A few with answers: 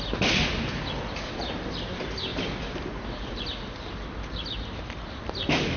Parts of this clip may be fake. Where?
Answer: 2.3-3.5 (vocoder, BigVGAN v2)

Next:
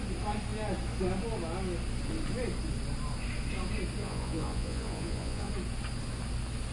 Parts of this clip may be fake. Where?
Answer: 4.0-5.5 (vocoder, Vocos)

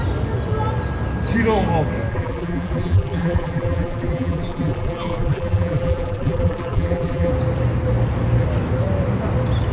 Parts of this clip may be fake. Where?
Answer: 2.1-7.3 (vocoder, BigVGAN v2)

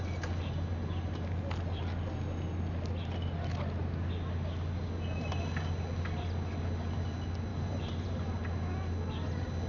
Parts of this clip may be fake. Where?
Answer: 7.5-8.2 (vocoder, BigVGAN v2)

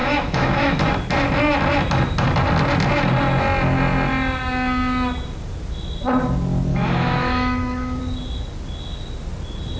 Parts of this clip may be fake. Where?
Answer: 0.0-0.8 (autoencoder, DAC-VAE); 6.7-8.0

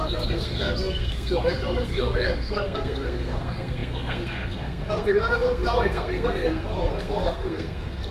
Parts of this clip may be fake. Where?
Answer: 0.0-8.1 (codec, SNAC)

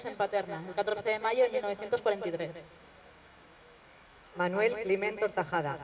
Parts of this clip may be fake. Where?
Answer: 0.0-5.8 (autoencoder, DAC-VAE)

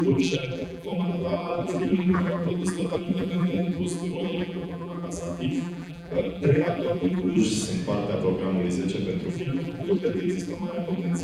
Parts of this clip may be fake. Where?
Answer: 0.0-7.4 (vocoder, BigVGAN v2); 9.3-11.2